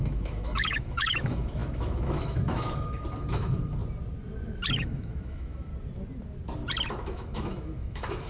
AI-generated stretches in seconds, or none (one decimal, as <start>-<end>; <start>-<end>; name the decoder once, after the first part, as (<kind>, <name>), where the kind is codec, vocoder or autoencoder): 0.0-3.8 (autoencoder, DAC-VAE); 4.7-5.7; 6.9-8.3